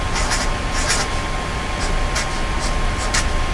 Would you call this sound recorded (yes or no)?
yes